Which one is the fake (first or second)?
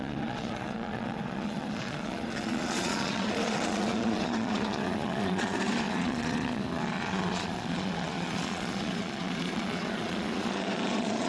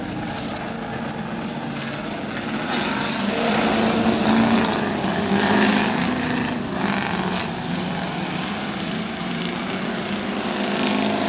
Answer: first